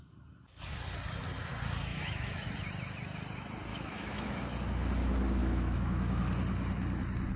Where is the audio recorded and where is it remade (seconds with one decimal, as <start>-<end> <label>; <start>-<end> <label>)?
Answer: 0.0-1.9 recorded; 1.9-2.5 remade; 2.5-3.7 recorded; 3.7-4.3 remade; 4.3-5.4 recorded; 5.4-6.2 remade; 6.2-7.4 recorded